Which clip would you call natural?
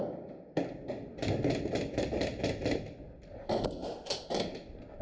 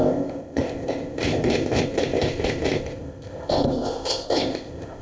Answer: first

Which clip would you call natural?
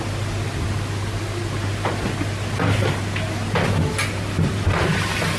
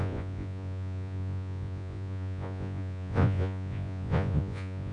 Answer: first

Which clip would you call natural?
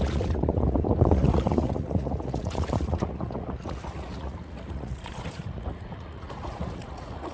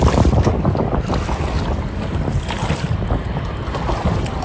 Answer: second